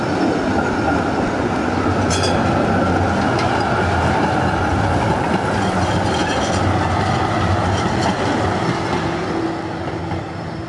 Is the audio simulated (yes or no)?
no